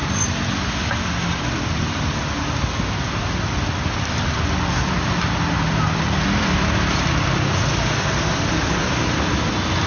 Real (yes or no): yes